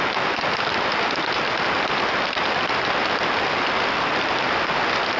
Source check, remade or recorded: recorded